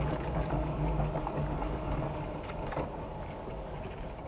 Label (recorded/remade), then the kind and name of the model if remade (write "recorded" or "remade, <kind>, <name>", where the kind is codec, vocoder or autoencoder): remade, codec, DAC